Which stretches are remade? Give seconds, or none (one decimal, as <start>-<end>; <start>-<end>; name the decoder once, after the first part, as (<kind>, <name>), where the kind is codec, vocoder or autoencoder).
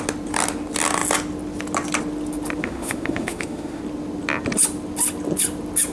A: 2.6-3.8 (autoencoder, DAC-VAE)